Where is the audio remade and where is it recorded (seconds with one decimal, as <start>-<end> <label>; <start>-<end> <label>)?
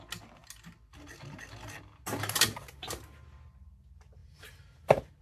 0.0-4.2 recorded; 4.2-5.2 remade